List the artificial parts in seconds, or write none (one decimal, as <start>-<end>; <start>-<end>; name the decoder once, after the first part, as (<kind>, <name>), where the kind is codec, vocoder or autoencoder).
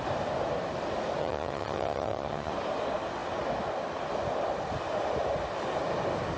1.2-2.5 (vocoder, HiFi-GAN)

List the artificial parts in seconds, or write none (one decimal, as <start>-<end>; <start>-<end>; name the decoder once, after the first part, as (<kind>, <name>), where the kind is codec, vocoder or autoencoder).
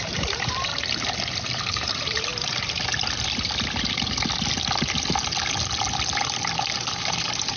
0.0-0.7 (vocoder, BigVGAN v2); 1.6-2.3; 6.9-7.6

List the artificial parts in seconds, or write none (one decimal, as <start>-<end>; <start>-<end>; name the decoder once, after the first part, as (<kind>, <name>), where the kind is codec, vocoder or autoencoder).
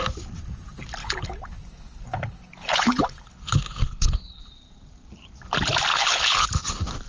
1.0-4.4 (codec, HILCodec); 5.9-6.5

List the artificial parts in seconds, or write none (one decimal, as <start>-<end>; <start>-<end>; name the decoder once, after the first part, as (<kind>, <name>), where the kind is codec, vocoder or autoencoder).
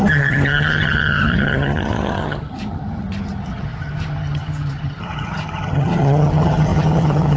0.0-7.4 (vocoder, HiFi-GAN)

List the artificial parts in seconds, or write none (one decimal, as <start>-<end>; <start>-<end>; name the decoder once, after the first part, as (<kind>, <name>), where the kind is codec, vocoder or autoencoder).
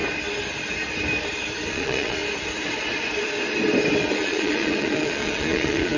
1.7-2.2 (vocoder, Vocos); 4.0-6.0